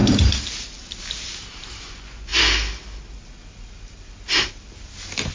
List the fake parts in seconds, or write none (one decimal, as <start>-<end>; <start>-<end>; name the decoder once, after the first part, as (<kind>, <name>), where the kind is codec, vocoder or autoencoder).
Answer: 1.8-2.3 (vocoder, Vocos)